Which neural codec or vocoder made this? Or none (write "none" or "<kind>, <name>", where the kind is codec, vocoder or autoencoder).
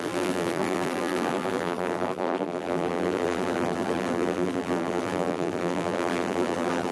vocoder, BigVGAN v2